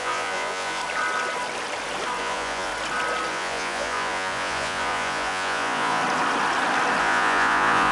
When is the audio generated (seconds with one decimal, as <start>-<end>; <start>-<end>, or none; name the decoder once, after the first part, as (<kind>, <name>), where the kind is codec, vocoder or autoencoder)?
0.0-0.8 (vocoder, Vocos); 2.2-2.7; 3.3-6.0; 7.0-7.9